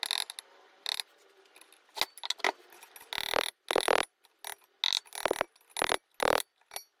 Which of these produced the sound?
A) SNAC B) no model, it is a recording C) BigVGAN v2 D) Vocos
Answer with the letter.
B